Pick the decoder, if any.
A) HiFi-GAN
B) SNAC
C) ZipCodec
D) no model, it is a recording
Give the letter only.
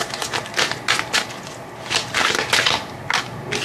D